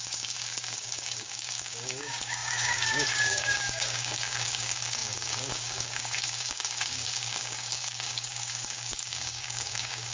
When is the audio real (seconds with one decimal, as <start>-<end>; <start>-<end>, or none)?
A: none